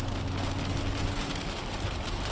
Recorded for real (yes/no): yes